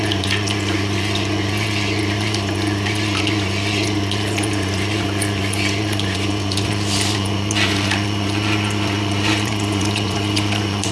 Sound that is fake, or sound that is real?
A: fake